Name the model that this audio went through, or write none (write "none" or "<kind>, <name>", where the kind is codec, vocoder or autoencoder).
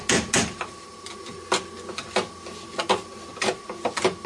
none